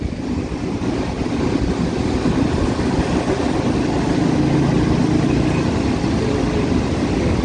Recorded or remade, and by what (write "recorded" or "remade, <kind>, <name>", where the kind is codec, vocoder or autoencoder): recorded